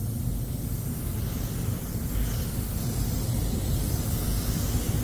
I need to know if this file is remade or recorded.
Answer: recorded